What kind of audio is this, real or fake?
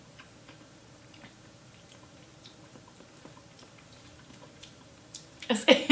fake